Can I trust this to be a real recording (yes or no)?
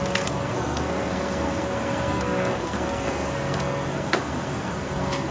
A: no